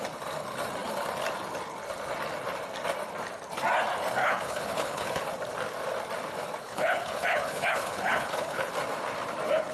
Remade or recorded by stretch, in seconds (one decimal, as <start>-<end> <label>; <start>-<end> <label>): 0.0-4.2 recorded; 4.2-5.2 remade; 5.2-6.6 recorded; 6.6-8.7 remade; 8.7-9.7 recorded